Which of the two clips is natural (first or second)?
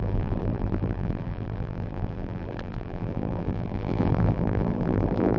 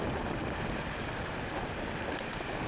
second